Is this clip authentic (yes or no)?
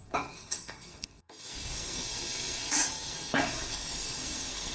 no